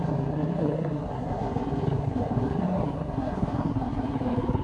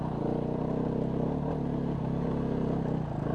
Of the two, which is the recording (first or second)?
second